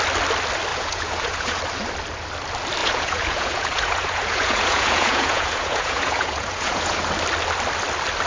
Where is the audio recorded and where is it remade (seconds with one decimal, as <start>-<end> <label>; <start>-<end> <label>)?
0.0-0.7 recorded; 0.7-1.6 remade; 1.6-2.8 recorded; 2.8-7.0 remade; 7.0-8.3 recorded